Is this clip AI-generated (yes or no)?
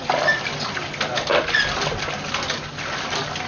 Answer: no